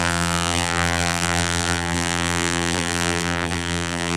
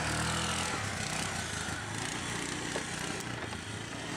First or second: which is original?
second